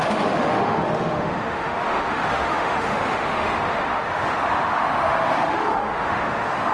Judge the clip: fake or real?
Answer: fake